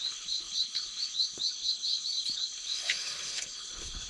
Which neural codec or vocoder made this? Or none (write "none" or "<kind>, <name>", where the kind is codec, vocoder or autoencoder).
codec, HILCodec